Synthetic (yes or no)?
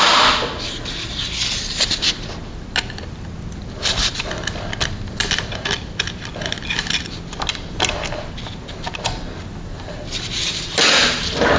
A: no